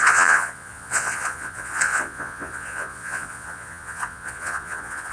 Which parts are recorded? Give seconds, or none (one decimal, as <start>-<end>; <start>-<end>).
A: none

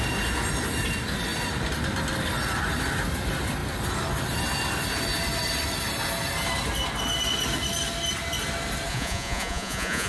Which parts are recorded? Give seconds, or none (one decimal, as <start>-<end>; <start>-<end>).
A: 0.0-8.9

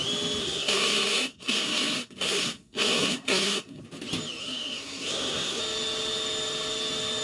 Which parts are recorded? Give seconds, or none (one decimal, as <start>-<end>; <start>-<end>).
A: 0.0-0.4; 3.8-4.4; 5.6-7.2

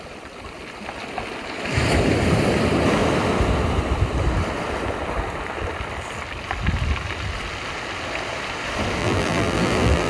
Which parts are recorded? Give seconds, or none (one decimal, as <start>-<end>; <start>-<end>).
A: 0.0-9.0

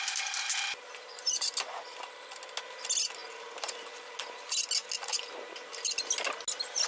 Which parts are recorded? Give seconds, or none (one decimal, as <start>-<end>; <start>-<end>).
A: 0.0-6.9

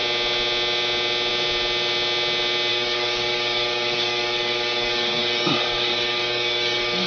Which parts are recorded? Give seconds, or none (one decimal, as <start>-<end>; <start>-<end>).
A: 0.0-2.7

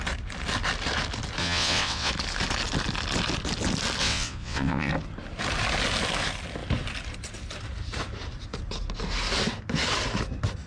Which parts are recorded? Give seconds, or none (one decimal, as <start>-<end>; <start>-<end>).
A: 0.0-1.4; 2.1-4.0; 4.9-10.7